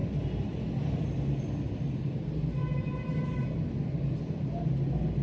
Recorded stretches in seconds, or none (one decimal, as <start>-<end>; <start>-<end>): 0.6-5.2